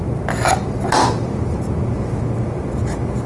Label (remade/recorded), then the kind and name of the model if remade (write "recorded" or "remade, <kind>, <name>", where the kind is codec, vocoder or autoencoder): recorded